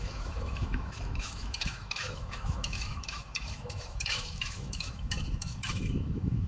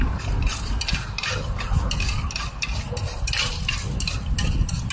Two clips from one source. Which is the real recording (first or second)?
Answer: second